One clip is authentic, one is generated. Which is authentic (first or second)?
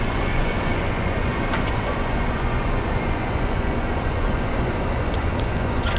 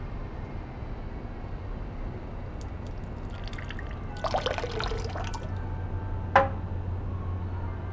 second